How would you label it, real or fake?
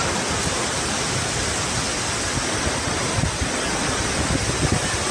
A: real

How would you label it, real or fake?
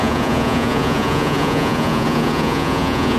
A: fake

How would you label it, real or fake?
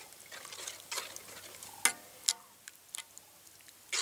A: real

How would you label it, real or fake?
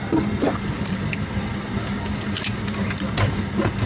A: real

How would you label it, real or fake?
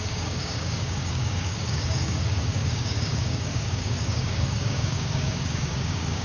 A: fake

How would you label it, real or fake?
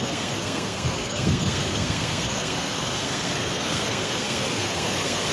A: fake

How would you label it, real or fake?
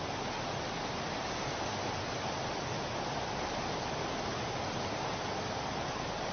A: real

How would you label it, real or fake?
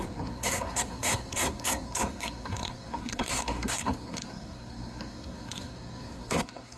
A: fake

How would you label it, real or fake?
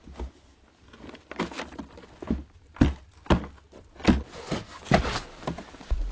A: real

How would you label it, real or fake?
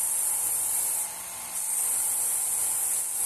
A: real